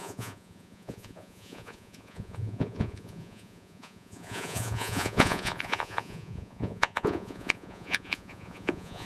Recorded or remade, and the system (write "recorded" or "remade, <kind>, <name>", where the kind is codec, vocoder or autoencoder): remade, vocoder, Vocos